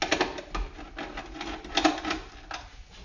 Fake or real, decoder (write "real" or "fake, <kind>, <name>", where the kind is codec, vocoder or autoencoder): real